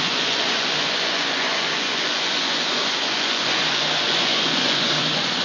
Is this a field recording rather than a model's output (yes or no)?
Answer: no